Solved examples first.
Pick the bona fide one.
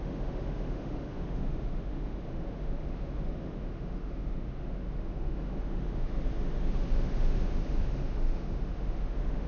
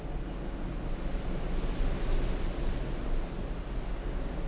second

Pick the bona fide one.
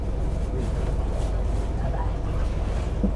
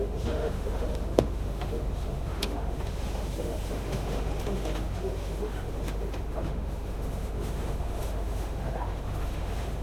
first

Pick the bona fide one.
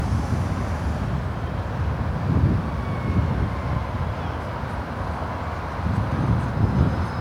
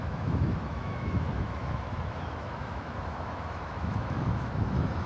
first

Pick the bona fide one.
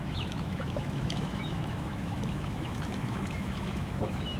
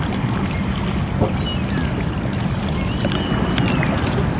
second